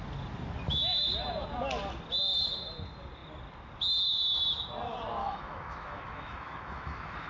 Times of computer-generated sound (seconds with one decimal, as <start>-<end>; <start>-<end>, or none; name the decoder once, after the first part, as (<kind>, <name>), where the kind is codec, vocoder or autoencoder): 5.2-7.3 (autoencoder, DAC-VAE)